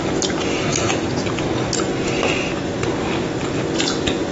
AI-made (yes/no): no